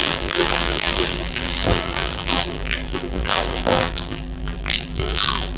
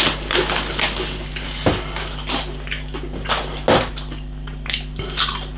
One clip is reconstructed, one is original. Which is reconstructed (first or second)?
first